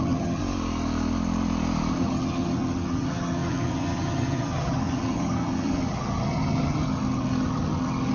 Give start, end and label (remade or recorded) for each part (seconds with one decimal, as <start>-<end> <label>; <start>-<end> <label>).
0.0-0.4 remade; 0.4-1.9 recorded; 1.9-8.1 remade